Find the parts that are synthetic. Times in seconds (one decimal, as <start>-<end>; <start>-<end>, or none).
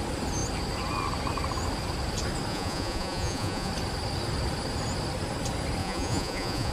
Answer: 2.5-3.7; 5.8-6.7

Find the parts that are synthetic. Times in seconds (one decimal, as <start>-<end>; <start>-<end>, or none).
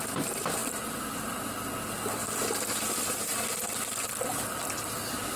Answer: none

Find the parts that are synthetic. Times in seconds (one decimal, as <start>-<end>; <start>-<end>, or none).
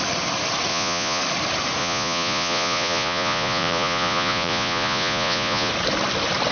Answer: 0.7-1.2; 1.8-5.7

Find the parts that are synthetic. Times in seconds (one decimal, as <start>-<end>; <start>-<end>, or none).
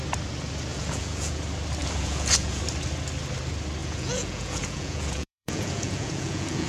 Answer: 0.7-1.4; 1.8-2.6; 3.8-6.7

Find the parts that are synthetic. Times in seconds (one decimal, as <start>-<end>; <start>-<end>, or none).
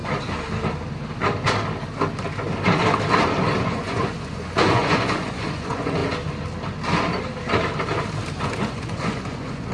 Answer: 3.6-6.0; 8.4-9.7